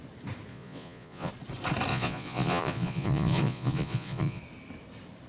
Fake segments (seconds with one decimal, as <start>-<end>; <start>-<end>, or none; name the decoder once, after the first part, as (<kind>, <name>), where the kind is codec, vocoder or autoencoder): 0.5-1.3 (vocoder, Vocos); 1.9-4.4